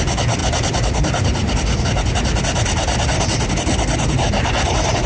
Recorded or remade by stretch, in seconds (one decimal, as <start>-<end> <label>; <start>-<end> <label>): 0.0-5.1 recorded